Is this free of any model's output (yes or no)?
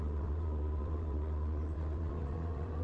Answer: no